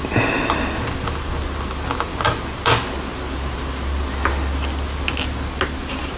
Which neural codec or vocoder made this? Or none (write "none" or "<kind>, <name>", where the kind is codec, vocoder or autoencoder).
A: none